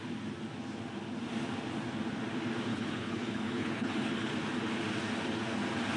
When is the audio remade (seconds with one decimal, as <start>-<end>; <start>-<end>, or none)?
2.7-4.3